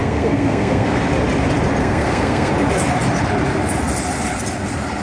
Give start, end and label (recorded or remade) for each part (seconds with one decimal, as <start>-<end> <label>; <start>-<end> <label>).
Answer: 0.0-1.0 remade; 1.0-1.8 recorded; 1.8-2.5 remade; 2.5-5.0 recorded